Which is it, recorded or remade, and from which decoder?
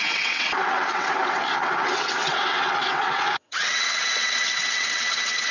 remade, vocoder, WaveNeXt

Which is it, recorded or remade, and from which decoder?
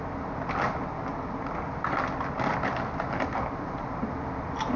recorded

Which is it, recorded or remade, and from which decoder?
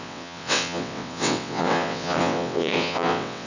remade, vocoder, WaveNeXt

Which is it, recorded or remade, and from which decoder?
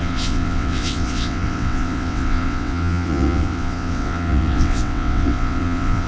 remade, vocoder, WaveNeXt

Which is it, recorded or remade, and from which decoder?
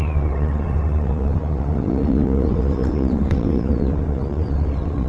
remade, vocoder, WaveNeXt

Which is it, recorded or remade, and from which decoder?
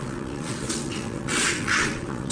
remade, vocoder, WaveNeXt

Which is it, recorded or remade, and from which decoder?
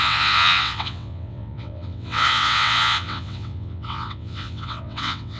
remade, vocoder, WaveNeXt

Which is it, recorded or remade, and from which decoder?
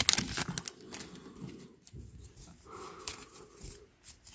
recorded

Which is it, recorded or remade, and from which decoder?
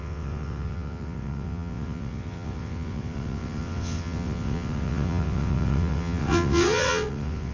remade, vocoder, WaveNeXt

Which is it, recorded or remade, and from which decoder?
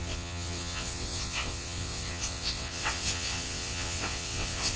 remade, vocoder, WaveNeXt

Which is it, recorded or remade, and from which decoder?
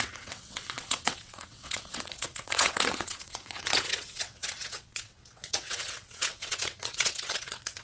remade, vocoder, WaveNeXt